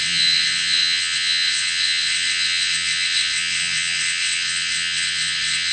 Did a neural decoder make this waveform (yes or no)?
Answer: yes